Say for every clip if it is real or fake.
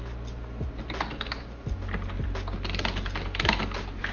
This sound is real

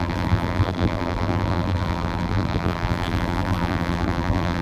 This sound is fake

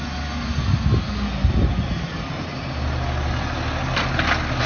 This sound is real